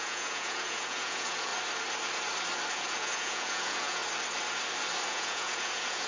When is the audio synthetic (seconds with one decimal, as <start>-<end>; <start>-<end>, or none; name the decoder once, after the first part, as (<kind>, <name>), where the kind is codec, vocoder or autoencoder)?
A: 0.0-1.5 (vocoder, Vocos); 2.7-4.0; 5.1-6.1